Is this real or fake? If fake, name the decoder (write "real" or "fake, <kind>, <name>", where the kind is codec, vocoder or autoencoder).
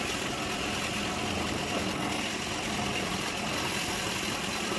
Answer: real